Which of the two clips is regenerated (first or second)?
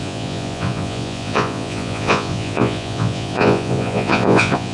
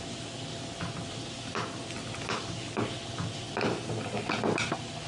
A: first